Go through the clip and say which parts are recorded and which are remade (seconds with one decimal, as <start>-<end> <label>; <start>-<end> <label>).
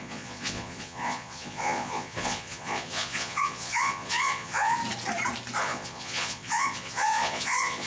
0.0-4.8 remade; 4.8-5.6 recorded; 5.6-7.9 remade